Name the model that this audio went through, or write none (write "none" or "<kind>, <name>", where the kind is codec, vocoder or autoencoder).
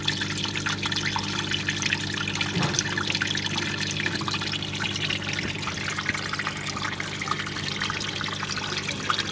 none